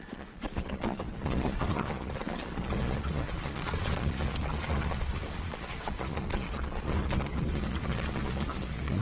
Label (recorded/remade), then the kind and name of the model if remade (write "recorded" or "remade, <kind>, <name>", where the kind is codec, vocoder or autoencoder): remade, vocoder, Vocos